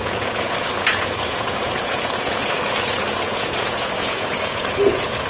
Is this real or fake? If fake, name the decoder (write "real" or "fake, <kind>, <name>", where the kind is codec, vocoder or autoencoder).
fake, vocoder, Vocos